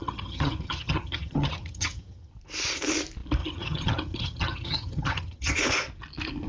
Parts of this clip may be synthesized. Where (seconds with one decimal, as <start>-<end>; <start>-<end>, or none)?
0.0-2.3; 3.4-5.6